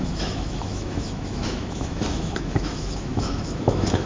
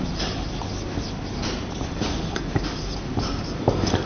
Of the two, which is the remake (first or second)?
first